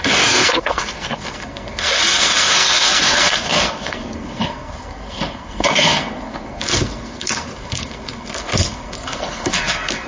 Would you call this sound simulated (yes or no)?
yes